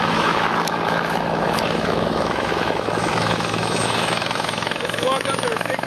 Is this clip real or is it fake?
fake